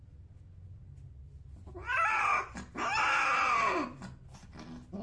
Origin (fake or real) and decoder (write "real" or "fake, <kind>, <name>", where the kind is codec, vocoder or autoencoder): real